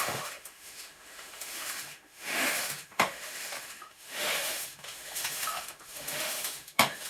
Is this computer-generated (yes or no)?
yes